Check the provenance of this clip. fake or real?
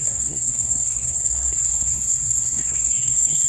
fake